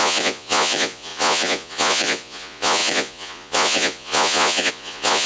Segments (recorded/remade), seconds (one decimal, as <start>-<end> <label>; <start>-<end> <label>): 0.0-5.3 remade